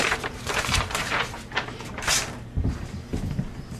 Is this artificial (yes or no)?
yes